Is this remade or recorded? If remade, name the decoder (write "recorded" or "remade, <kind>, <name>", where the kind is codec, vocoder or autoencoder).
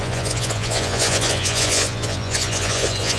remade, vocoder, Vocos